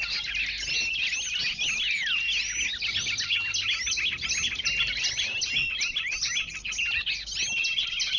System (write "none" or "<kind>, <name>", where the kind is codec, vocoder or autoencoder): none